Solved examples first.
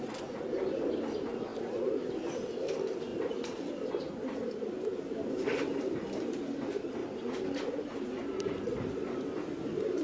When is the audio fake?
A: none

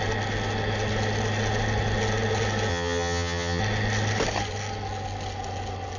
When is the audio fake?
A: 2.7-3.6 (vocoder, HiFi-GAN)